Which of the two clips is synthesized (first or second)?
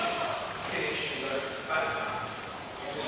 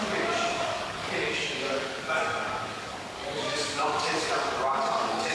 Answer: second